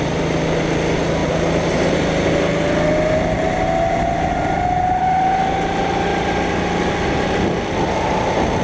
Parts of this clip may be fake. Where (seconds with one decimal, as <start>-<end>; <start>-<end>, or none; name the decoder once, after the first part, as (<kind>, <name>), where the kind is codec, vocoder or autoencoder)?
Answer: none